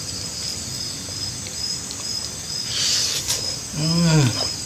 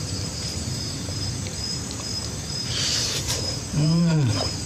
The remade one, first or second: second